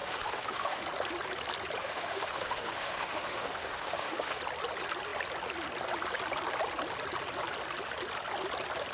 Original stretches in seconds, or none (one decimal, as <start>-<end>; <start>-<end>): 0.8-1.8; 4.4-8.9